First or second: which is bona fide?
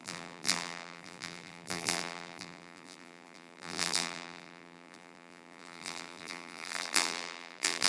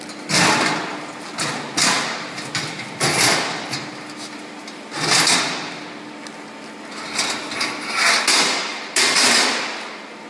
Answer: second